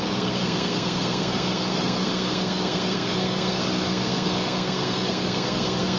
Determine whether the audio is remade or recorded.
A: remade